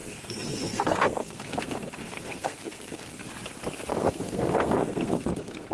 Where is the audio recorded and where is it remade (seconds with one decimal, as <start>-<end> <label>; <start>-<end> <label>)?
0.0-3.2 remade; 3.2-3.9 recorded; 3.9-5.7 remade